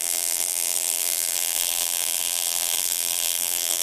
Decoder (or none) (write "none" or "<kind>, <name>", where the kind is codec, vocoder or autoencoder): vocoder, BigVGAN v2